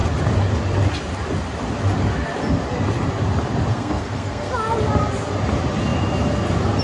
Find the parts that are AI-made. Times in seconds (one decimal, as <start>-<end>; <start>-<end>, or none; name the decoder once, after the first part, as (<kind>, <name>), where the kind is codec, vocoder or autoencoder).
3.7-4.5 (codec, SNAC)